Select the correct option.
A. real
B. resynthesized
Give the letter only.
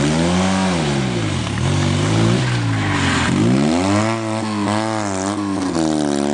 A